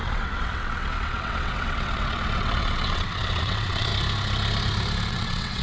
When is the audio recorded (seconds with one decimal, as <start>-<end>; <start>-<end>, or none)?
3.9-5.1